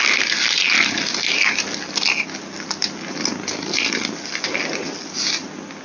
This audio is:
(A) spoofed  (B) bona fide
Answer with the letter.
B